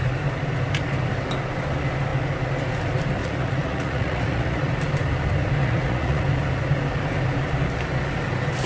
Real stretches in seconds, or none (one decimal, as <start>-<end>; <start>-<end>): 0.0-3.2; 4.7-5.6; 6.2-8.7